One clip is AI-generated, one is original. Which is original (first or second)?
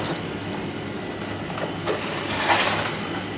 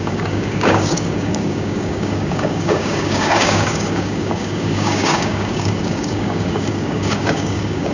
first